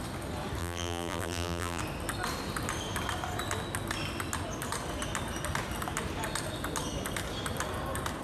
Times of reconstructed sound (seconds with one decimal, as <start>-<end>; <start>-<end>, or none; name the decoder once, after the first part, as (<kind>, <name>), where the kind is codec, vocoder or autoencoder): 0.6-1.8 (vocoder, BigVGAN v2)